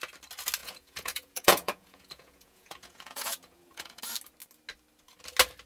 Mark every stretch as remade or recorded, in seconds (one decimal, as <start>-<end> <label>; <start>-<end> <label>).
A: 0.0-0.6 recorded; 0.6-4.0 remade; 4.0-5.7 recorded